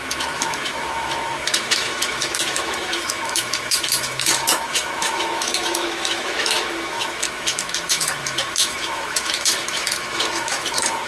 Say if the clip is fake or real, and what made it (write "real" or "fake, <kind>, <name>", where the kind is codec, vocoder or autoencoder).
fake, autoencoder, DAC-VAE